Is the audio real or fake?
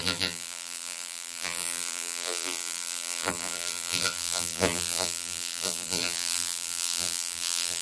fake